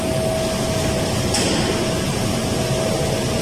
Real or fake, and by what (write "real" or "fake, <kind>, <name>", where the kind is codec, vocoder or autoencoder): real